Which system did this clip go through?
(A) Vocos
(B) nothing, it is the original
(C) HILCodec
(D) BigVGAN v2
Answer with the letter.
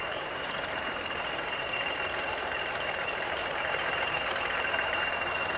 D